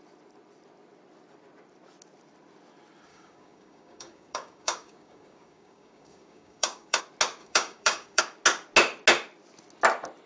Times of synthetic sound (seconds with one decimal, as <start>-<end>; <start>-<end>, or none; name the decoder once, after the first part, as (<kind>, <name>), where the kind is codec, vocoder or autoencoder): 3.1-7.0 (codec, DAC); 7.4-8.2